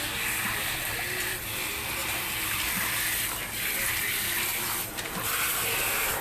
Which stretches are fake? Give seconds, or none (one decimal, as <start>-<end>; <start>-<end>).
2.0-2.7